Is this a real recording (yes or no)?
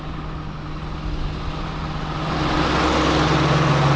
yes